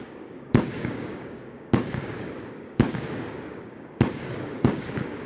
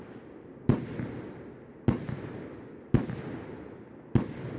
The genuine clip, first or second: second